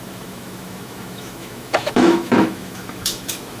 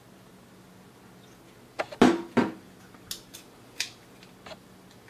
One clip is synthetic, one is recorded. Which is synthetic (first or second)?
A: first